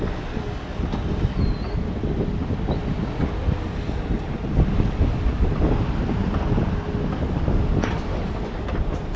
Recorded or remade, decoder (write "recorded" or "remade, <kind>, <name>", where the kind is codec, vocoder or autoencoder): recorded